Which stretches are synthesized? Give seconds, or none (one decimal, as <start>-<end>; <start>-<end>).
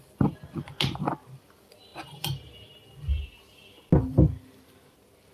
none